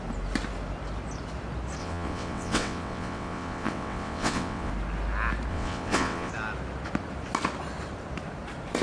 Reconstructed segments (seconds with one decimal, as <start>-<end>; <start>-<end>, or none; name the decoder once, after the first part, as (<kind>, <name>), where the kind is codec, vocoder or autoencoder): 1.8-4.7 (vocoder, WaveNeXt); 5.5-6.3